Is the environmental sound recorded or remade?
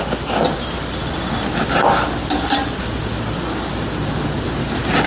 recorded